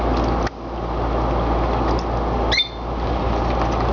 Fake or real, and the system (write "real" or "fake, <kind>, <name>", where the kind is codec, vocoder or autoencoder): real